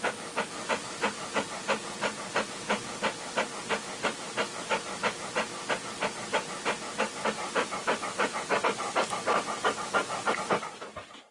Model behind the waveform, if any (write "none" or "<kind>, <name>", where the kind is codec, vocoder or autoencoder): none